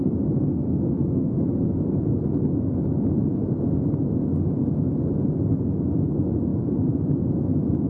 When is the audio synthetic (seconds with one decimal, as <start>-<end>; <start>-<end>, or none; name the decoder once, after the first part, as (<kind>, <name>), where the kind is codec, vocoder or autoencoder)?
0.5-1.4 (autoencoder, DAC-VAE)